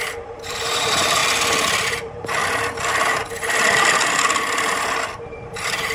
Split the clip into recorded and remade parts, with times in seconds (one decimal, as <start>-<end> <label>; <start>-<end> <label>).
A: 0.0-1.2 remade; 1.2-1.8 recorded; 1.8-2.4 remade; 2.4-5.3 recorded; 5.3-5.9 remade